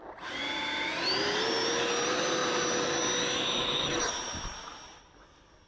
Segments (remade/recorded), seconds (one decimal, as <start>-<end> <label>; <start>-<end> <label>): 0.0-5.7 recorded